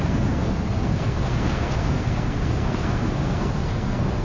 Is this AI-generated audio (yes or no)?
yes